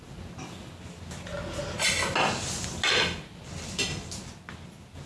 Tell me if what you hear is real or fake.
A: real